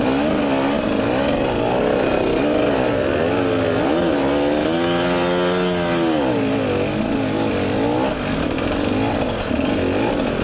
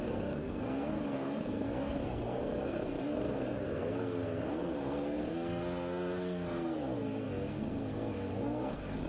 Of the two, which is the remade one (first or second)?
second